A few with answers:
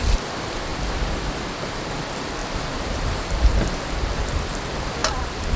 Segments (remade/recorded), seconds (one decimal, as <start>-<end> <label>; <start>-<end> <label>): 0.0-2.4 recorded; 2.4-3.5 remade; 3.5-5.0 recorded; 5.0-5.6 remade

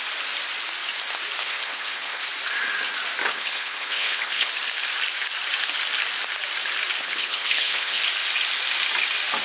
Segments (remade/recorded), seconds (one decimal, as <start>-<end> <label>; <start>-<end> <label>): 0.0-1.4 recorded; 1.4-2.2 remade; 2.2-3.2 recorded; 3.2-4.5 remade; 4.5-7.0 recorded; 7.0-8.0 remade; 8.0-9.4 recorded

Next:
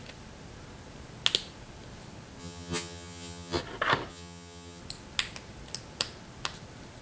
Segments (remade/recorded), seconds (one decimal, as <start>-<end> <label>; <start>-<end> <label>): 0.0-2.4 recorded; 2.4-3.6 remade; 3.6-4.1 recorded; 4.1-4.8 remade; 4.8-7.0 recorded